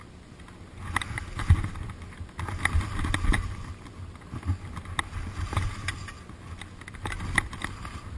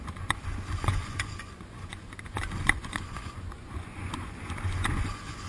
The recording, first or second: first